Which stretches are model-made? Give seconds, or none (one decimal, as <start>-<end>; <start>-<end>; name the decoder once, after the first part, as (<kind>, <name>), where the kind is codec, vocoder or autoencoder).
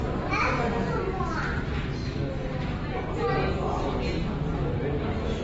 none